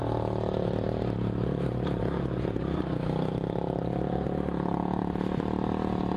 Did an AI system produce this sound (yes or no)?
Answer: no